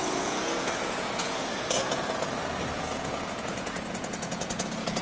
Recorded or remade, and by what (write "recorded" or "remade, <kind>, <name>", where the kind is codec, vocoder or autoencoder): remade, vocoder, Vocos